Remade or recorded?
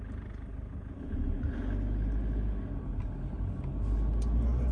recorded